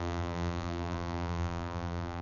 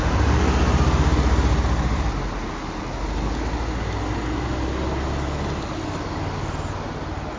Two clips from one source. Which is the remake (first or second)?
first